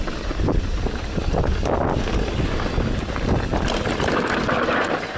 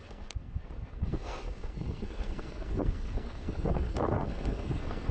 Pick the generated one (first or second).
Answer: second